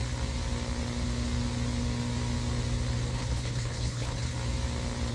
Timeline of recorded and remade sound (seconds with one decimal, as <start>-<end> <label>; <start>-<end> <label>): 0.0-3.1 recorded; 3.1-4.3 remade; 4.3-5.1 recorded